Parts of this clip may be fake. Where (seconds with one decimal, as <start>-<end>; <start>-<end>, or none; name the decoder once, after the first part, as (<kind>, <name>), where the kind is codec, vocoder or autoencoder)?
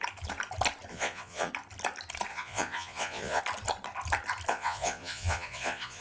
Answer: 0.9-1.5 (vocoder, Vocos); 2.3-3.4; 4.5-6.0